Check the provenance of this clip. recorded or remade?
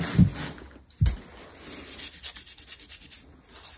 recorded